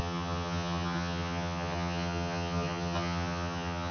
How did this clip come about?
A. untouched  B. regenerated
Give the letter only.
B